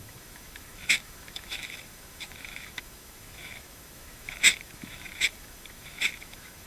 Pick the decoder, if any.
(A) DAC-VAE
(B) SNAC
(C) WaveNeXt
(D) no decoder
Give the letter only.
A